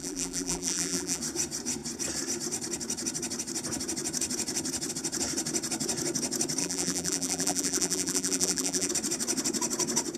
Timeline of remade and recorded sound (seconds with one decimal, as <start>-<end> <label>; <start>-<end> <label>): 0.0-1.2 remade; 1.2-6.6 recorded; 6.6-8.9 remade; 8.9-10.2 recorded